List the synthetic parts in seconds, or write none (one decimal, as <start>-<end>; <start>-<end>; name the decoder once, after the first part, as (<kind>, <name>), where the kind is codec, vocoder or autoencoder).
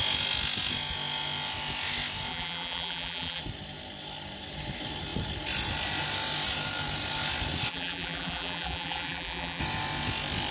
2.3-3.4 (vocoder, BigVGAN v2); 7.7-9.6